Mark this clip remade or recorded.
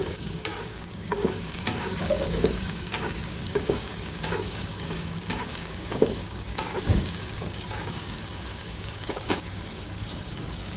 remade